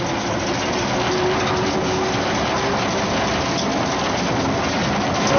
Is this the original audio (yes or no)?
yes